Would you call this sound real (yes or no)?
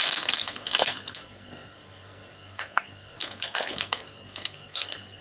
no